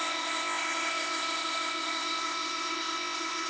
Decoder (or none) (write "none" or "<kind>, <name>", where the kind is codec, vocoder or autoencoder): codec, ZipCodec